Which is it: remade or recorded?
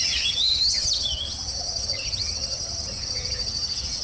remade